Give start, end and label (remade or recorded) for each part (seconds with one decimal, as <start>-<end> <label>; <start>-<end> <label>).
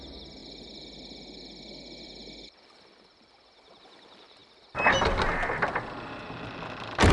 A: 0.0-7.1 recorded